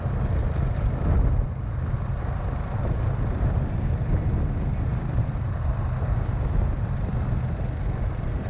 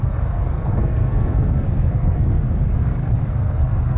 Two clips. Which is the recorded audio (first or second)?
first